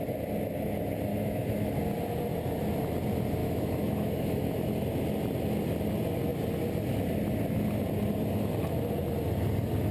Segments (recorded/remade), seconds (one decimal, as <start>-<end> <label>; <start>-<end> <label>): 0.0-1.1 recorded; 1.1-1.8 remade; 1.8-3.4 recorded; 3.4-4.4 remade; 4.4-9.9 recorded